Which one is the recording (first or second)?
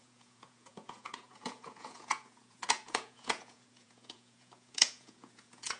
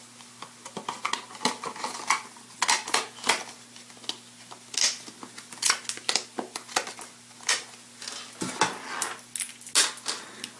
second